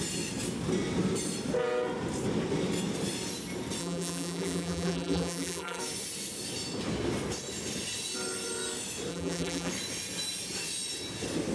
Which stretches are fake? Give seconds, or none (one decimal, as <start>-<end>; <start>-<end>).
3.8-5.8; 9.1-9.7